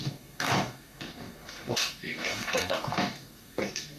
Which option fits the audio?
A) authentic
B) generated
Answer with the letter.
B